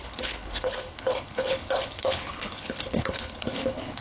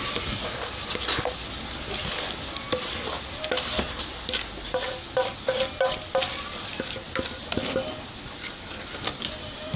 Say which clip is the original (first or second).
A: second